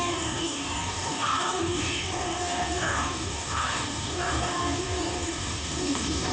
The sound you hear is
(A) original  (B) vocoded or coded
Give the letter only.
B